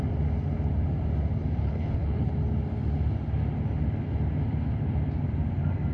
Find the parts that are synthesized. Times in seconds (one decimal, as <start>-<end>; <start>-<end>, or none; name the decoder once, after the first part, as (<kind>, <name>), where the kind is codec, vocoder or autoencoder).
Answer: 1.6-2.3 (codec, HILCodec)